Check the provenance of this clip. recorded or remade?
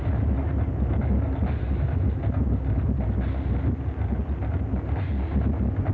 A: recorded